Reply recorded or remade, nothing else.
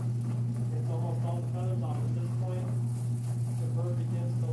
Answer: recorded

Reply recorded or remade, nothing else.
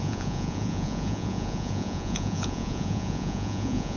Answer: remade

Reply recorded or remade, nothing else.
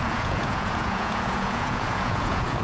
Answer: remade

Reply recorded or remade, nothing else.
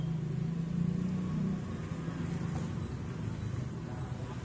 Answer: recorded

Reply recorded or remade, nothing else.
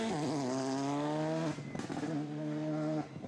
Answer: recorded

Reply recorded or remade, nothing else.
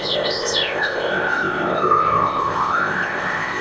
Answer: remade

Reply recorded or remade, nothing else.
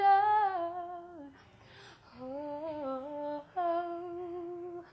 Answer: recorded